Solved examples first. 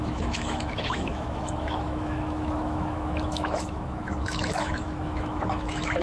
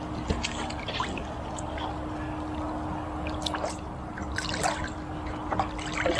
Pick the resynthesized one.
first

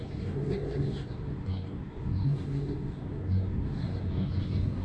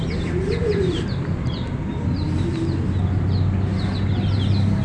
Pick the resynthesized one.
first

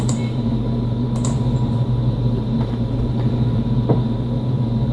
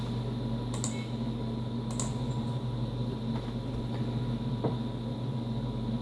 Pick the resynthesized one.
first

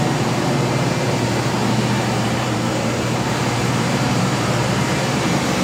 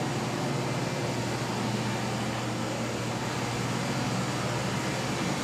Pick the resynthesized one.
first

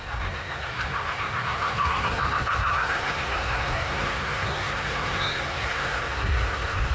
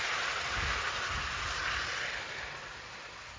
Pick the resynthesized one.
first